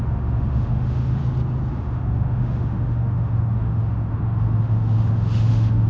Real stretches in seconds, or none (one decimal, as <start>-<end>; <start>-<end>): 1.2-1.7